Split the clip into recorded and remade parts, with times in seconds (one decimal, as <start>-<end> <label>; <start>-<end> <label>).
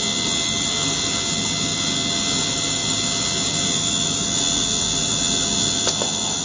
0.0-6.4 recorded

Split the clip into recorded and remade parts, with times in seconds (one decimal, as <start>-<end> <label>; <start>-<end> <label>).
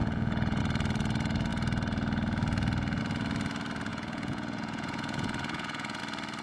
0.0-0.6 remade; 0.6-3.9 recorded; 3.9-6.0 remade; 6.0-6.4 recorded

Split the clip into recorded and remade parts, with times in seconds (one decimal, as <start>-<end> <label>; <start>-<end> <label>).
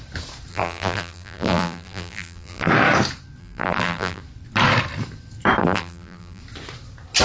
0.0-0.5 recorded; 0.5-2.7 remade; 2.7-3.4 recorded; 3.4-4.2 remade; 4.2-5.6 recorded; 5.6-6.4 remade; 6.4-7.2 recorded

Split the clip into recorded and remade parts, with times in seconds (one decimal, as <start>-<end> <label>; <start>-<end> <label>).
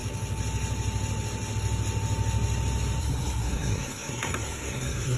0.0-3.0 recorded; 3.0-5.2 remade